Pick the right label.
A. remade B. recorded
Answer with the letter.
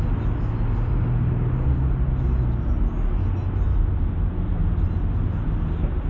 B